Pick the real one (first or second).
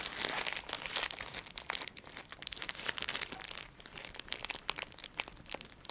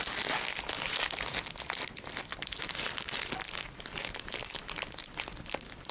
second